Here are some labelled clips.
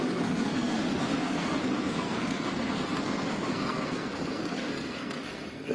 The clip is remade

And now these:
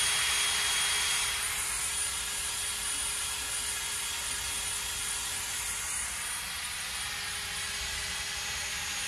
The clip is recorded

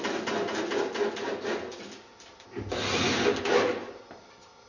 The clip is recorded